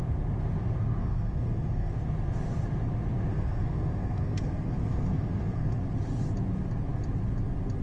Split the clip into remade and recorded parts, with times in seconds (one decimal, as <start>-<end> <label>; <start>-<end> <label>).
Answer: 0.0-1.0 recorded; 1.0-1.9 remade; 1.9-3.3 recorded; 3.3-5.8 remade; 5.8-7.8 recorded